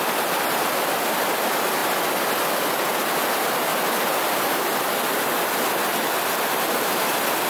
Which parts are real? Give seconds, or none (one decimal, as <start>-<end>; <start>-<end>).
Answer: 0.0-7.5